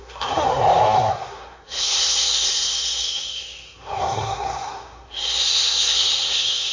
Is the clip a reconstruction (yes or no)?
yes